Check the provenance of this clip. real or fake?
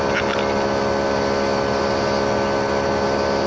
real